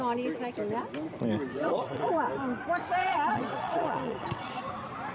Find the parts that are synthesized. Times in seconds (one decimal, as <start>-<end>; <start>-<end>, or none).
1.5-2.1; 3.0-4.6